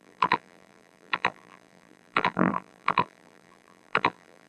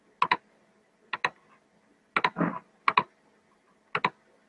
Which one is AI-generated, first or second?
first